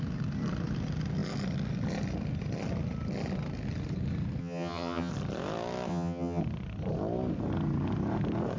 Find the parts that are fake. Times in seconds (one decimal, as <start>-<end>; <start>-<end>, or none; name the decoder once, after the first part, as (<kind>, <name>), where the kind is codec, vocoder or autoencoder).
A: 4.4-5.1 (vocoder, HiFi-GAN); 5.9-6.4